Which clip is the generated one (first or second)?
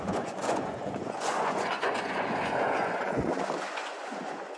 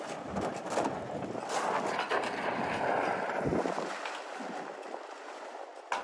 first